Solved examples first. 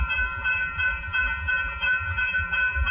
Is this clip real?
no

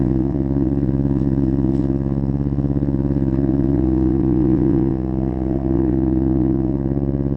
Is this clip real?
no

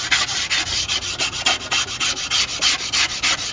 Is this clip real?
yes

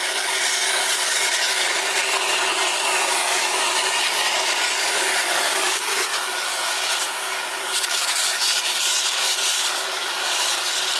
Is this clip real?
no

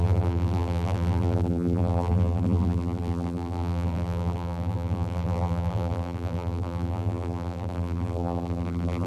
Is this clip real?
no